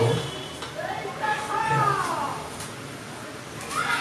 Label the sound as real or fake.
real